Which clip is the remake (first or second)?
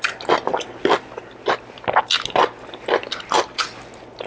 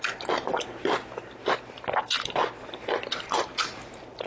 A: second